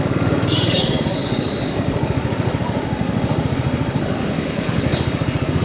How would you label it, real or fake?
fake